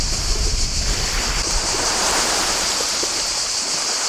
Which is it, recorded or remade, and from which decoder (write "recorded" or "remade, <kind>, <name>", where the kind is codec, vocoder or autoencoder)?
remade, vocoder, BigVGAN v2